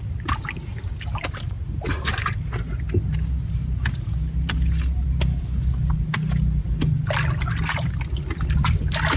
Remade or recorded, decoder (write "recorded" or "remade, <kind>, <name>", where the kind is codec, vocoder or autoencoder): recorded